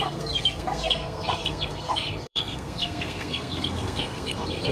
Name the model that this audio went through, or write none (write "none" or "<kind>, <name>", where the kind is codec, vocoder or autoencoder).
codec, SNAC